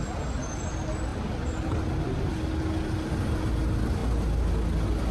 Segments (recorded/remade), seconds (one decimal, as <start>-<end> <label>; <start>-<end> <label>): 0.0-1.1 recorded; 1.1-2.0 remade; 2.0-5.1 recorded